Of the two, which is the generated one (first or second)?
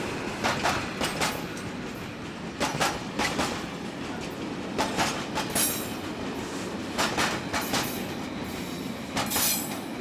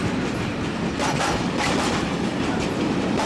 second